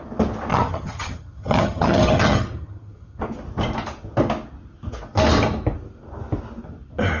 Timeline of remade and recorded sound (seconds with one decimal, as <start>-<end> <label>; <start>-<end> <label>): 0.0-0.5 recorded; 0.5-3.2 remade; 3.2-7.2 recorded